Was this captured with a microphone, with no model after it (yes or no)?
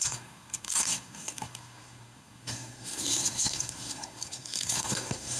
no